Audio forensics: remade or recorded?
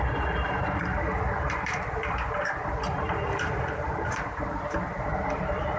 recorded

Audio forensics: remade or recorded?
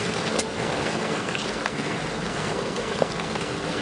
remade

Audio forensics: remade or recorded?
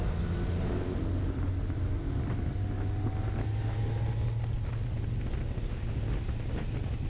recorded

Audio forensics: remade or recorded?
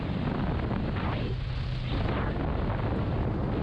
recorded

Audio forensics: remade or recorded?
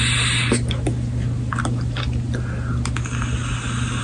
recorded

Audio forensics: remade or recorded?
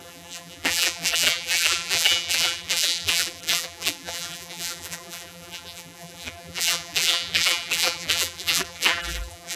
remade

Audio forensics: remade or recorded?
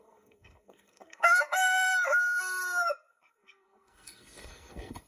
remade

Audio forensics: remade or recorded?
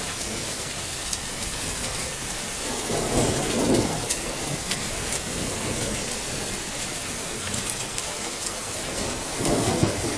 remade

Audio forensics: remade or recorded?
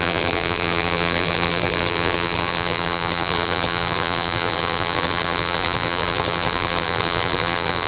remade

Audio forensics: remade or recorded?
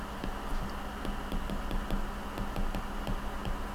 recorded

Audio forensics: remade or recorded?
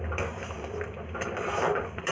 remade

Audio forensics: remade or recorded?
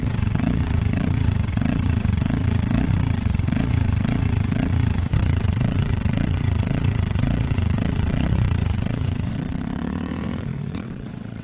remade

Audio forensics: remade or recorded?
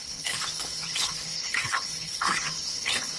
remade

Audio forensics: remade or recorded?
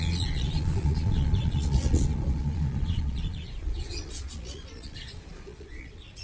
remade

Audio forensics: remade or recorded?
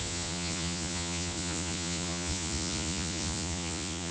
remade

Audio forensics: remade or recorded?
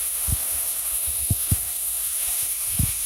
remade